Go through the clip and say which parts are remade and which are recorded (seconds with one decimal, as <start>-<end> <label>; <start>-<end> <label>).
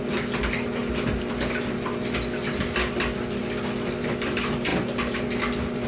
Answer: 0.0-5.9 recorded